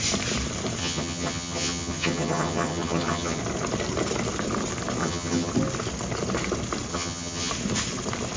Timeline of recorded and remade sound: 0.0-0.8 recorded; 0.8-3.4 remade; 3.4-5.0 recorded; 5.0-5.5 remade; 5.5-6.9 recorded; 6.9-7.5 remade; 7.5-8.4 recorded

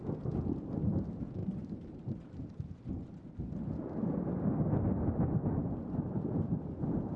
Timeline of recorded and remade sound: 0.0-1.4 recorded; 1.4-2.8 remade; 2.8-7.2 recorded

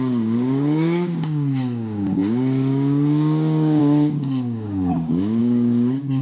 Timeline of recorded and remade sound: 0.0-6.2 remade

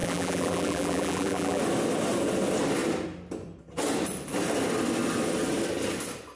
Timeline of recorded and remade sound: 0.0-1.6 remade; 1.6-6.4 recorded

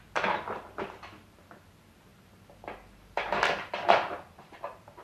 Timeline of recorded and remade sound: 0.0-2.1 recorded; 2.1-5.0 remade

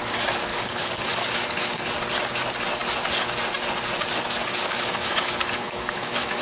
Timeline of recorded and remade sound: 0.0-0.5 recorded; 0.5-1.9 remade; 1.9-4.4 recorded; 4.4-6.4 remade

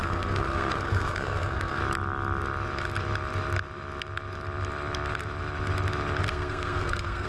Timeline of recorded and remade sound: 0.0-1.8 remade; 1.8-6.2 recorded; 6.2-7.3 remade